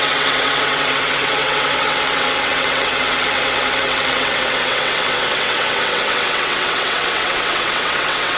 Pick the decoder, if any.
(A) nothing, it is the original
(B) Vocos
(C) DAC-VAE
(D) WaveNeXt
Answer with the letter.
D